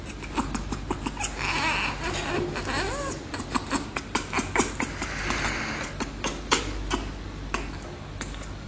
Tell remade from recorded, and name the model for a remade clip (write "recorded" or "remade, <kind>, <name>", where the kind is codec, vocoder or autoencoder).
recorded